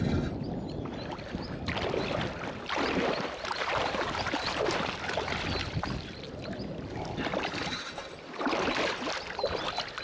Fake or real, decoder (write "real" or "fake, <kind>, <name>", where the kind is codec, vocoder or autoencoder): real